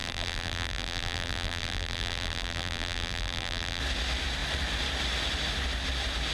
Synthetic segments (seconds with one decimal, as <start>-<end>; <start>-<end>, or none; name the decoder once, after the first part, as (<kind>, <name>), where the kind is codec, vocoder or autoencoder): 0.0-3.8 (vocoder, BigVGAN v2)